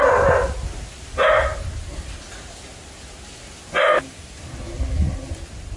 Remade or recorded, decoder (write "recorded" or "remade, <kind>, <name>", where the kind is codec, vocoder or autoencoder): recorded